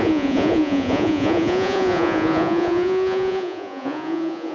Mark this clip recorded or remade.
remade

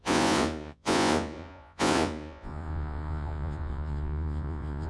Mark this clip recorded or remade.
remade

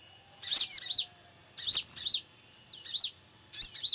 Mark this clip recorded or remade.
recorded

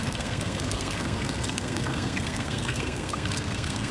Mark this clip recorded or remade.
remade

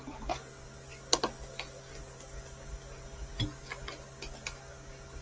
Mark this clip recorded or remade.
recorded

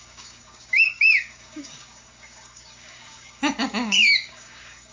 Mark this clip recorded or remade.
remade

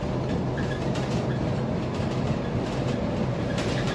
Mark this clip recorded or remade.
recorded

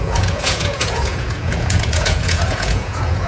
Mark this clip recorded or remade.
remade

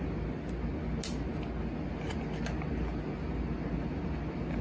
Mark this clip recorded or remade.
recorded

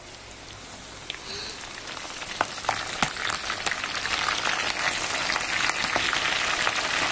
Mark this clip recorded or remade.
recorded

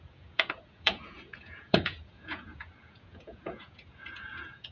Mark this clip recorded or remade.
remade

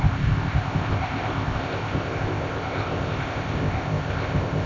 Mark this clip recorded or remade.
remade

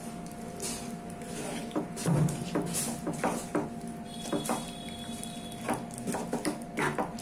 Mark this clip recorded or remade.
recorded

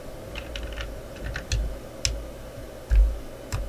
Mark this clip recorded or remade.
recorded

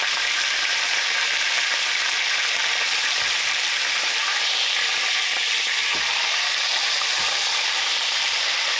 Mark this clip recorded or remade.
remade